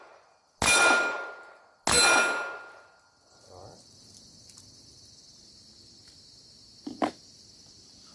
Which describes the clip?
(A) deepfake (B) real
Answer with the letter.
B